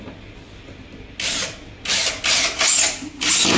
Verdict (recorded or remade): recorded